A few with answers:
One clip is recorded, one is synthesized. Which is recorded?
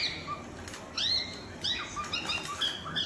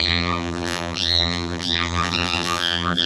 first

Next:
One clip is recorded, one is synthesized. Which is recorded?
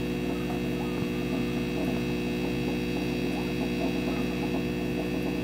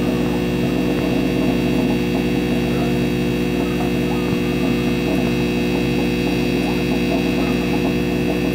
second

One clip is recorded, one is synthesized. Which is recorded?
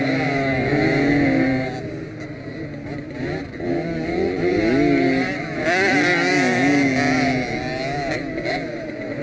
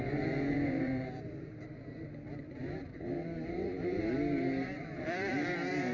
first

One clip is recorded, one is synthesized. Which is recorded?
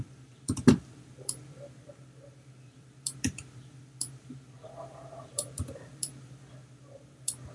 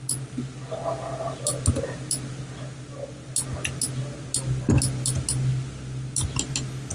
second